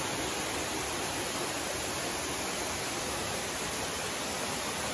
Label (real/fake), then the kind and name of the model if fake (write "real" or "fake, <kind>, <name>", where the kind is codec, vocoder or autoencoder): real